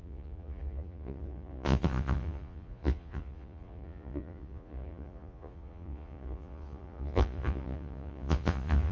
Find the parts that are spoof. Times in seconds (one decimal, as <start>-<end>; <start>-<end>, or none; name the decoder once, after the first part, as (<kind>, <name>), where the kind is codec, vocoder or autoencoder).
0.0-8.9 (vocoder, Vocos)